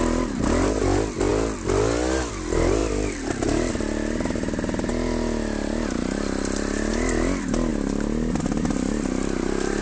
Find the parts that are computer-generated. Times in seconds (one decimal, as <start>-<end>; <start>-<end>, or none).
none